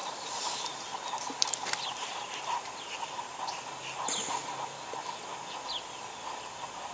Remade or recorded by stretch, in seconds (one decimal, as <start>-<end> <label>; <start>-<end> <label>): 0.0-3.4 remade; 3.4-6.9 recorded